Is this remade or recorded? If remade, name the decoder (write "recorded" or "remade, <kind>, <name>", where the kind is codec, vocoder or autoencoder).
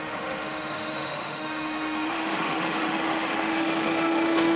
remade, autoencoder, DAC-VAE